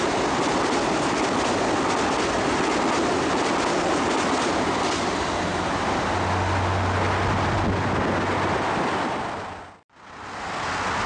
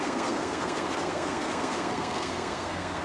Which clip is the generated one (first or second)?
second